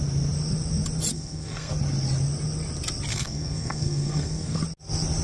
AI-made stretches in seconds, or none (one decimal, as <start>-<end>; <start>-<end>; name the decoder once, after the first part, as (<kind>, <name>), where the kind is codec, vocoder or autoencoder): 1.1-1.7 (codec, SNAC); 3.1-4.6